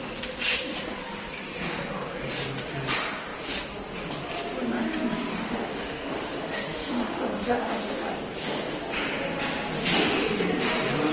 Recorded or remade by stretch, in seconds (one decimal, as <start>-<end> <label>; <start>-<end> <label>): 0.0-5.3 recorded; 5.3-8.1 remade; 8.1-9.8 recorded; 9.8-10.4 remade; 10.4-11.1 recorded